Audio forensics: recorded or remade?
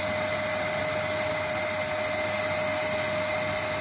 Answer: recorded